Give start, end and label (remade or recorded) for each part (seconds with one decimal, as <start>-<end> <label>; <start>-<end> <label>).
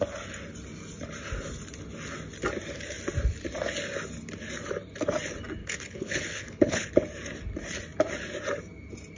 0.0-5.6 recorded; 5.6-6.9 remade; 6.9-9.2 recorded